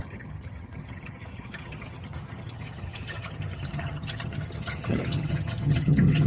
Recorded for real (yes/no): no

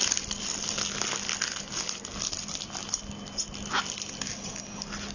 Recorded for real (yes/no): yes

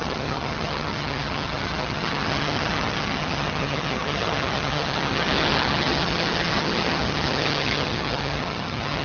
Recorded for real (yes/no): no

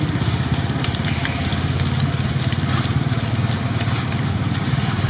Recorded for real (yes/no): yes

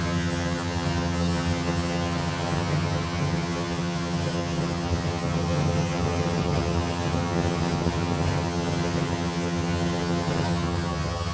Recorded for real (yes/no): no